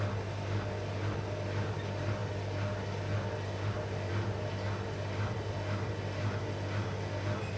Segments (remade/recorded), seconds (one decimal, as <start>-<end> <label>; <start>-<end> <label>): 0.0-7.6 recorded